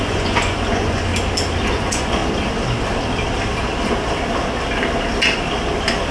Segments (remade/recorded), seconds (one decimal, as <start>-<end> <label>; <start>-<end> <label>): 0.0-1.1 remade; 1.1-1.7 recorded; 1.7-2.2 remade; 2.2-6.1 recorded